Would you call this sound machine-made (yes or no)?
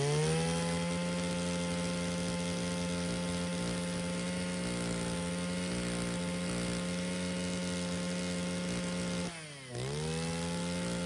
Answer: no